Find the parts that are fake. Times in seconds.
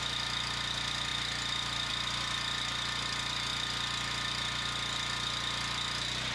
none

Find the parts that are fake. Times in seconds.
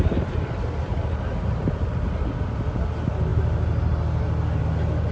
none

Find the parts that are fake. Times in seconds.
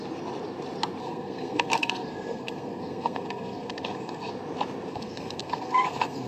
1.0-4.3; 4.9-6.3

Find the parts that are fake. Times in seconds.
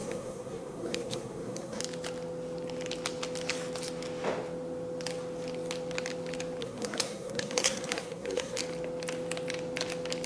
0.0-1.8; 6.6-8.6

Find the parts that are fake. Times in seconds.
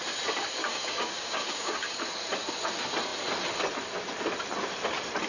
0.6-2.0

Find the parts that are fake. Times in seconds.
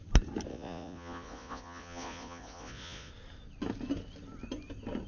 0.5-3.1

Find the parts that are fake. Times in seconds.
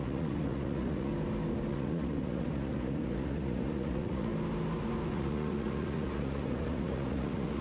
0.0-1.1; 1.7-4.3; 5.1-7.6